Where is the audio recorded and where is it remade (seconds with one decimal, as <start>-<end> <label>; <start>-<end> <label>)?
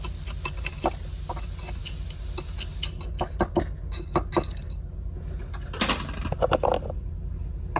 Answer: 0.0-7.8 recorded